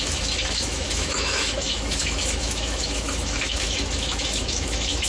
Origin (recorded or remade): remade